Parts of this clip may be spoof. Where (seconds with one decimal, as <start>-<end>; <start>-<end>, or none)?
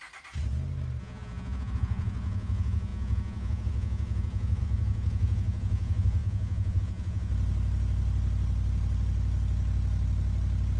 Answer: 1.0-7.3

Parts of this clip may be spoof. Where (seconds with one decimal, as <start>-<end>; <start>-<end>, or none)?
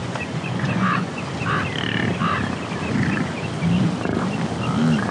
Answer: 0.0-1.2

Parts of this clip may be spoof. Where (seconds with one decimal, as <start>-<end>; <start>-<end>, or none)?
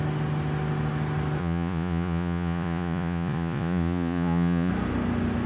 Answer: 1.4-4.7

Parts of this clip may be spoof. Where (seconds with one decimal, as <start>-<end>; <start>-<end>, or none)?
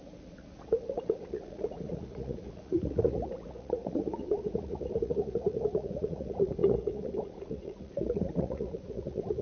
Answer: 0.0-9.4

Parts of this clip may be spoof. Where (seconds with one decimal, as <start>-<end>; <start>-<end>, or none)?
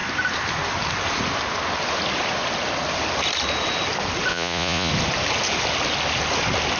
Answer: 4.3-4.9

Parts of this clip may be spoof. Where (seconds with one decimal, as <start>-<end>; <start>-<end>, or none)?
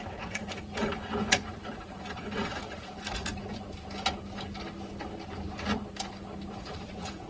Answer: 0.0-3.3; 6.5-7.3